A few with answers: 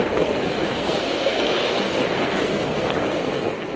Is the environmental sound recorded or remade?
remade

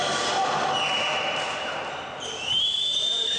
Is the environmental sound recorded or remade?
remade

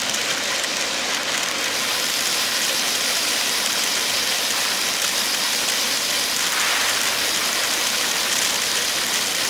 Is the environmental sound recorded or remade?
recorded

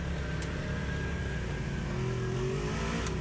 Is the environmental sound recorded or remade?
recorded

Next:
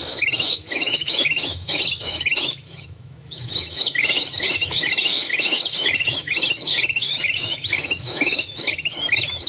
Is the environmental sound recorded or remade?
remade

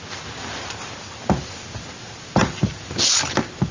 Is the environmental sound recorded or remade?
recorded